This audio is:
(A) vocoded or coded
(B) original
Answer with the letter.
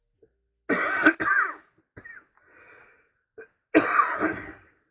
B